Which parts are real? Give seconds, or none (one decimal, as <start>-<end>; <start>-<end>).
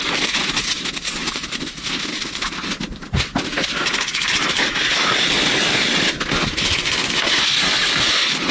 0.0-8.5